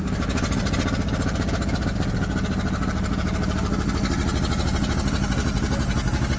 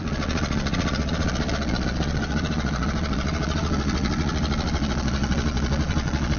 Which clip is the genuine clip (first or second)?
first